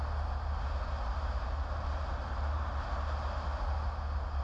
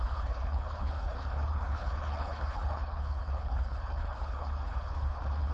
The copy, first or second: second